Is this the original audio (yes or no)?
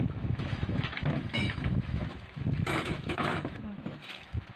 no